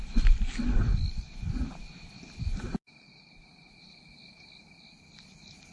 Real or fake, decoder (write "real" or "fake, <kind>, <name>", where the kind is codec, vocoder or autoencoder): fake, vocoder, BigVGAN v2